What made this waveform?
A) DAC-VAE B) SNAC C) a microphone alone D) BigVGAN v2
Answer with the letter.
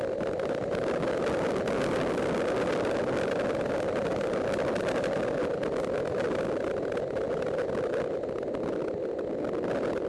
C